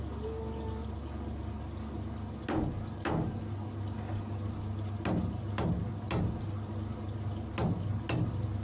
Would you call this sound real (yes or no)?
yes